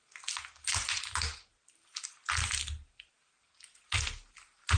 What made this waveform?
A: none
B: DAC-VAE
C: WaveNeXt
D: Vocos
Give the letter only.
A